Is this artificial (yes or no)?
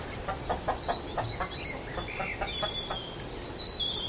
no